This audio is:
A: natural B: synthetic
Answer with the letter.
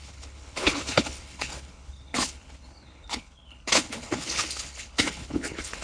B